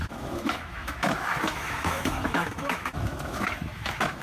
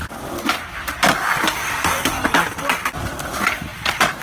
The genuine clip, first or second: second